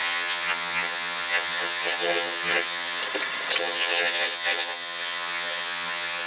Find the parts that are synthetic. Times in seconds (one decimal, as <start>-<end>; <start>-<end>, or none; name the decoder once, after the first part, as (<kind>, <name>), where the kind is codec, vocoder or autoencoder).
0.0-3.0 (vocoder, HiFi-GAN); 3.6-6.3